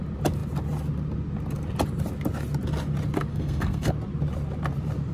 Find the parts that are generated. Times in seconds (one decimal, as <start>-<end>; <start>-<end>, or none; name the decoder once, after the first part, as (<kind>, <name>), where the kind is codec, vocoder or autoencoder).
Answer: 3.3-3.9 (codec, SNAC)